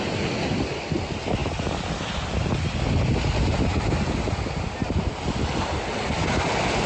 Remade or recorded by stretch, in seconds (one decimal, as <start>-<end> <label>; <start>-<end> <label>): 0.0-6.9 recorded